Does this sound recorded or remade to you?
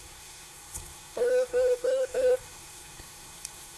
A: remade